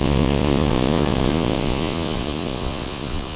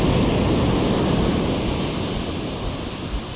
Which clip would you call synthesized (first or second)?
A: first